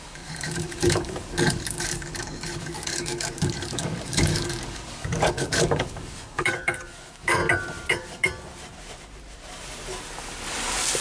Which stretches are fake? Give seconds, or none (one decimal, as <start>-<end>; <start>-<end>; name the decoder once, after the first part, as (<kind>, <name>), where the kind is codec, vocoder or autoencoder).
0.0-7.4 (codec, DAC); 7.9-8.3